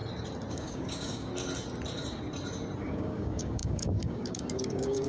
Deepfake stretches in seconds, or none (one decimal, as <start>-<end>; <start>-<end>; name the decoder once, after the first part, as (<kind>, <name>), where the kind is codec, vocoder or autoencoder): 0.5-1.3 (codec, DAC); 2.8-5.1